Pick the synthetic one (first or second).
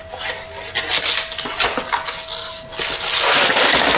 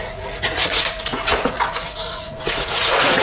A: second